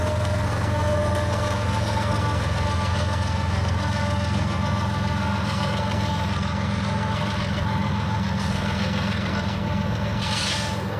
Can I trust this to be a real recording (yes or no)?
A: no